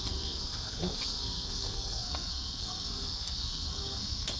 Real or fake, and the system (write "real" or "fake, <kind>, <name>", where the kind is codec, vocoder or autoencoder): fake, codec, SNAC